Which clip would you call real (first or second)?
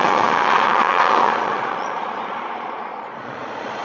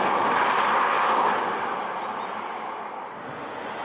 second